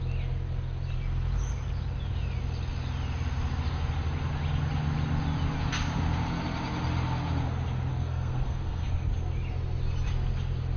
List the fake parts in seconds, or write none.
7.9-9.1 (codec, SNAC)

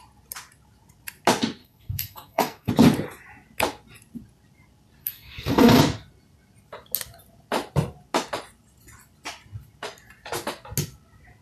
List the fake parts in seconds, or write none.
1.6-2.7 (codec, SNAC); 5.0-5.8